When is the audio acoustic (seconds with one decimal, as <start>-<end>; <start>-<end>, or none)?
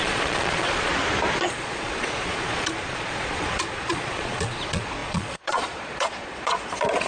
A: 0.9-1.5